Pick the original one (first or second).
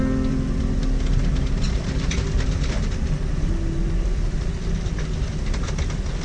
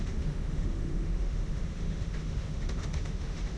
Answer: first